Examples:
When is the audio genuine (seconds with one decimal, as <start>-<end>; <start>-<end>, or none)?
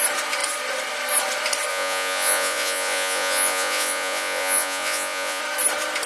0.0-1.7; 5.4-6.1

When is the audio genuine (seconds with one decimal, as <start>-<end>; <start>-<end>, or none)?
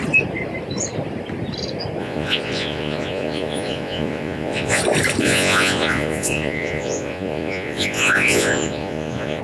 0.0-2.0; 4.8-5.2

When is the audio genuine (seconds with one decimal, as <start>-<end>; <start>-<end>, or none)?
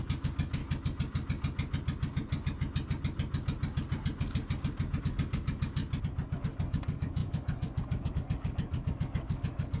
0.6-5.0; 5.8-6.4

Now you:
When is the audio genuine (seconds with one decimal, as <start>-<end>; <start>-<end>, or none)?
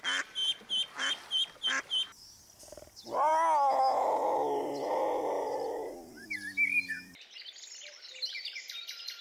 0.0-9.2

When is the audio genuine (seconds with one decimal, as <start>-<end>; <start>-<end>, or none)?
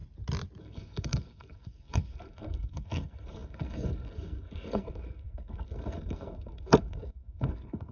0.0-0.6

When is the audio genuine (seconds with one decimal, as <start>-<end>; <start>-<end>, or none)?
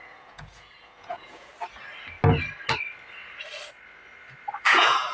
1.5-4.6